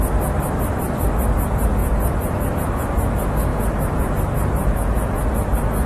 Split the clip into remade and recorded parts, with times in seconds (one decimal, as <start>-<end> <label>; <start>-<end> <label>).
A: 0.0-1.8 recorded; 1.8-2.5 remade; 2.5-3.5 recorded; 3.5-4.1 remade; 4.1-4.6 recorded; 4.6-5.2 remade; 5.2-5.9 recorded